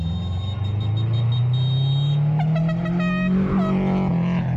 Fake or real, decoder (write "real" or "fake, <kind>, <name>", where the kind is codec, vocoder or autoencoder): real